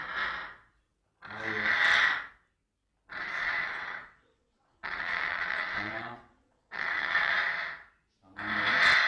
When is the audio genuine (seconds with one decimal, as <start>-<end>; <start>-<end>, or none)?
0.0-3.6; 7.3-9.1

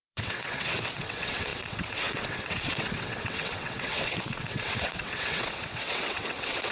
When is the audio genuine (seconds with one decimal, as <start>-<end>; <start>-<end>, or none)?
none

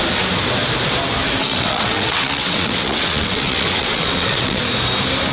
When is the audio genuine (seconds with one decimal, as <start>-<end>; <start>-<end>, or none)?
0.0-1.4; 4.6-5.3

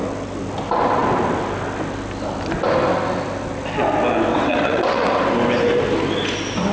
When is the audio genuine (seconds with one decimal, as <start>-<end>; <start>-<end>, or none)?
0.0-4.3; 5.2-6.7